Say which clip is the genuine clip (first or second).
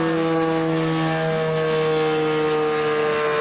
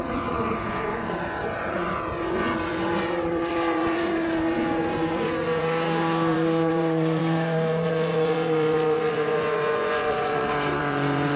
first